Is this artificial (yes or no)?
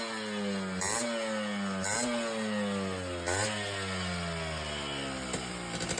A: no